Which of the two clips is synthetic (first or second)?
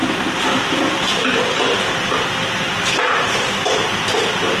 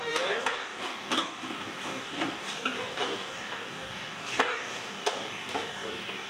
second